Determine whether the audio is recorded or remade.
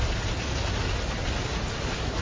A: recorded